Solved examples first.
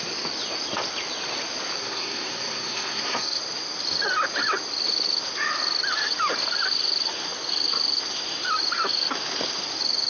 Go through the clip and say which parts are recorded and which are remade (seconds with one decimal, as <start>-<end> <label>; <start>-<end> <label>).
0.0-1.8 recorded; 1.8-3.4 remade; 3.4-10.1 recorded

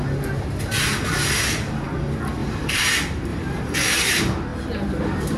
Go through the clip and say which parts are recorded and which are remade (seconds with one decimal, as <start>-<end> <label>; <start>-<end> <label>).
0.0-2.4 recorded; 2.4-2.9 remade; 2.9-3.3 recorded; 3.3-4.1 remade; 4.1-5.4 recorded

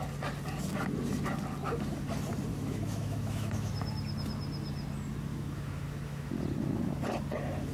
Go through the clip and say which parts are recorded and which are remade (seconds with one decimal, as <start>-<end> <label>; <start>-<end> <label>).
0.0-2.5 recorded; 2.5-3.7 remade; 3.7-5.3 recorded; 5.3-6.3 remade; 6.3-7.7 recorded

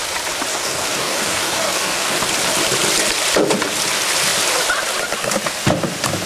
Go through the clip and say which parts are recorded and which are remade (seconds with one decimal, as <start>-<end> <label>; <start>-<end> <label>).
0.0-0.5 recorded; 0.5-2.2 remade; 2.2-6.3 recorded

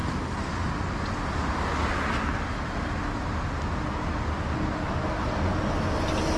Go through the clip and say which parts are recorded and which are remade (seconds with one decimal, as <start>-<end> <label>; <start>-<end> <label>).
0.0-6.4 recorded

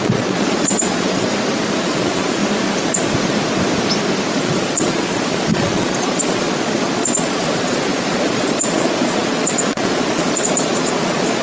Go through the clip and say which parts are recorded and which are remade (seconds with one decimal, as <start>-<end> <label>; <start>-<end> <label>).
0.0-1.3 remade; 1.3-1.8 recorded; 1.8-2.4 remade; 2.4-4.3 recorded; 4.3-11.4 remade